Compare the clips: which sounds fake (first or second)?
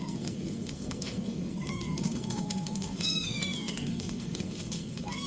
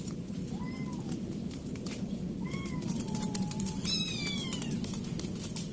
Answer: first